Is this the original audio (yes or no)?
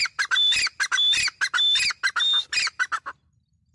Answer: yes